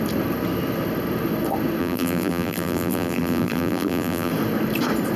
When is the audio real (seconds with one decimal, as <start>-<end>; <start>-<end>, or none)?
0.0-1.8; 4.3-5.2